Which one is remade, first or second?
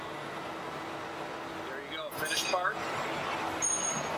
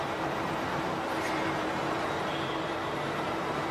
second